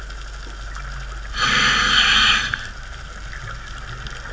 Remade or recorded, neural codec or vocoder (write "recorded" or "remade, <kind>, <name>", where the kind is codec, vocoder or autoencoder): recorded